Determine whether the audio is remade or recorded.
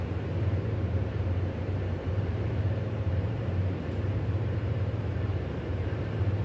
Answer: remade